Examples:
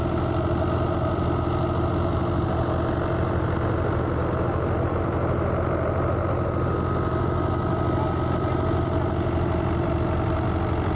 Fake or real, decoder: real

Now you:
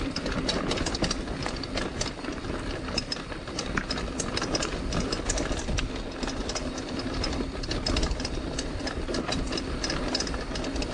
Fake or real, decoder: real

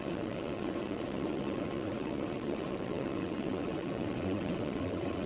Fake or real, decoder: fake, vocoder, WaveNeXt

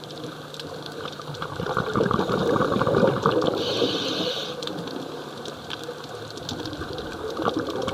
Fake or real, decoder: real